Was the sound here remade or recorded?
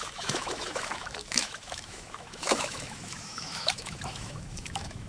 remade